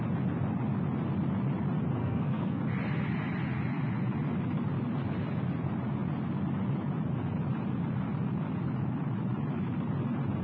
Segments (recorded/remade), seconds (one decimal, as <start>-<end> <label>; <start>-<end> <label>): 0.0-2.0 recorded; 2.0-2.6 remade; 2.6-10.4 recorded